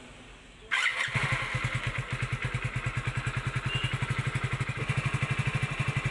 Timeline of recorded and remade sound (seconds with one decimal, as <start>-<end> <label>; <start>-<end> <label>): 0.0-6.1 recorded